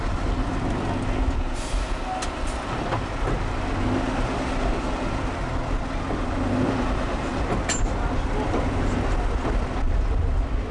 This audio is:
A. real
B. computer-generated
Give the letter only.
A